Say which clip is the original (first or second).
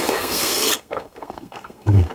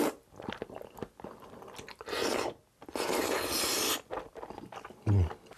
second